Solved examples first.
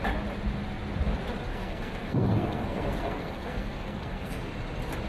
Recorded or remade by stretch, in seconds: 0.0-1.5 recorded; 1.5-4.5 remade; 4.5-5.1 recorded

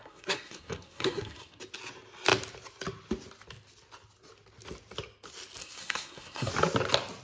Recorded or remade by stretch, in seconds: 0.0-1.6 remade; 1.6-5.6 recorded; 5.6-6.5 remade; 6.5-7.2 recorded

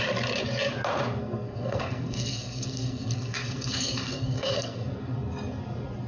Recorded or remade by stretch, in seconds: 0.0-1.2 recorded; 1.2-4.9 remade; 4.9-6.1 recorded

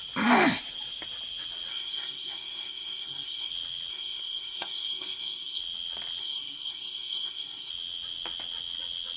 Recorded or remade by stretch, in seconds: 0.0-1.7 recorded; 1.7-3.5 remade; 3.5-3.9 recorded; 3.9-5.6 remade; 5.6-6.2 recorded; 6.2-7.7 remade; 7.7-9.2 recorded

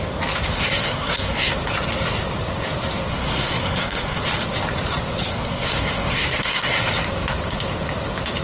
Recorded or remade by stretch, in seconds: 0.0-0.6 recorded; 0.6-1.5 remade; 1.5-3.1 recorded; 3.1-4.2 remade; 4.2-5.2 recorded; 5.2-6.8 remade; 6.8-8.4 recorded